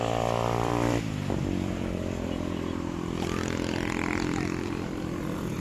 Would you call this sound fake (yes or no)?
yes